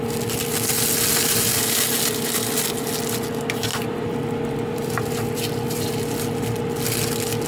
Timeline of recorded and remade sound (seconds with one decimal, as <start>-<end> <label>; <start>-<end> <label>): 0.0-3.7 recorded; 3.7-6.6 remade; 6.6-7.5 recorded